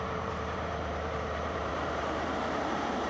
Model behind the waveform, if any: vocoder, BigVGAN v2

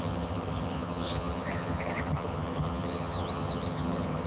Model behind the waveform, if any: vocoder, HiFi-GAN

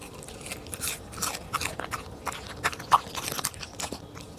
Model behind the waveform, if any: none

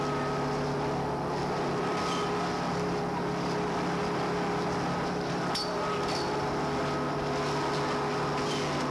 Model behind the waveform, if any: none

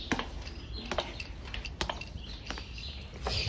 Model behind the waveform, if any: none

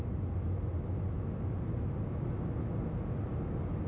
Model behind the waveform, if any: none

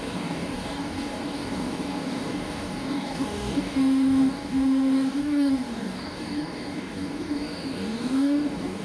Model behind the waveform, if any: codec, DAC